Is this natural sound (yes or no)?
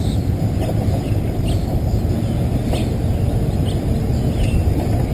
yes